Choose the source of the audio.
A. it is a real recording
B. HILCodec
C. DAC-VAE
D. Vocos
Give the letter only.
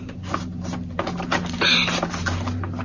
A